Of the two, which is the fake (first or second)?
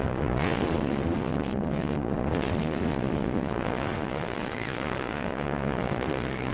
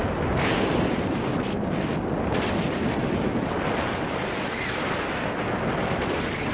first